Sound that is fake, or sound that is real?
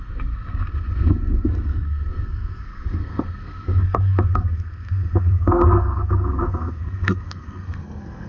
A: fake